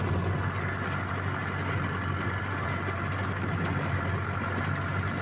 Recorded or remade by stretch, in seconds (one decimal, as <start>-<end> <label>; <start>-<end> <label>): 0.0-5.2 recorded